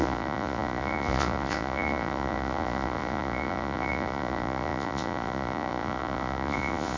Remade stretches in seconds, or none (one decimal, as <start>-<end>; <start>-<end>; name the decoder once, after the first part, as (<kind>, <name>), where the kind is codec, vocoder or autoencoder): 0.0-7.0 (vocoder, Vocos)